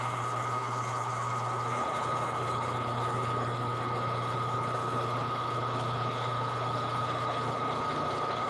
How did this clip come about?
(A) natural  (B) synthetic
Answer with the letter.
B